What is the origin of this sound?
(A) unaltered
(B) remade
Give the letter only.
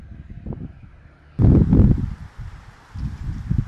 A